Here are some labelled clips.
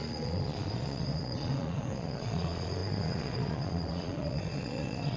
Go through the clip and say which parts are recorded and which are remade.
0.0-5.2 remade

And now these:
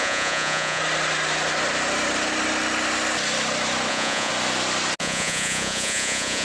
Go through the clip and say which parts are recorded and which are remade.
0.0-0.8 remade; 0.8-3.9 recorded; 3.9-4.3 remade; 4.3-5.0 recorded; 5.0-6.4 remade

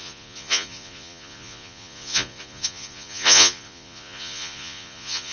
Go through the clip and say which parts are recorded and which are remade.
0.0-5.3 remade

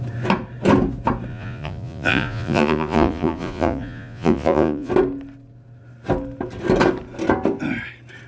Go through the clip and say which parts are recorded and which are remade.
0.0-1.3 recorded; 1.3-4.9 remade; 4.9-8.3 recorded